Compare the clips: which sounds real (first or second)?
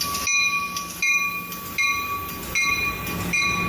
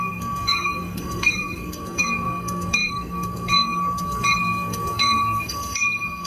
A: first